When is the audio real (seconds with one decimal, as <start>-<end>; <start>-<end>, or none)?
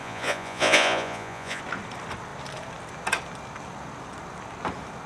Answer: 1.6-5.1